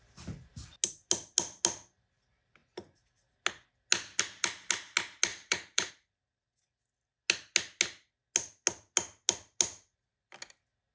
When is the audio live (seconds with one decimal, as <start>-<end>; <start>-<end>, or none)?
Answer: 0.0-5.3; 5.9-10.9